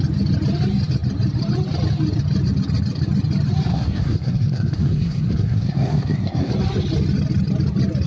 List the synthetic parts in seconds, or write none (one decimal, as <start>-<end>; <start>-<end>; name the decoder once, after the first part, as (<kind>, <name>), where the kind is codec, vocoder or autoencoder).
3.7-6.5 (codec, SNAC)